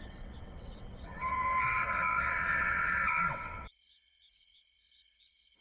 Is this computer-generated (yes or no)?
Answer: yes